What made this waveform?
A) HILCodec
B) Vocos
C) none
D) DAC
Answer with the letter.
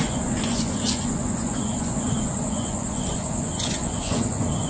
B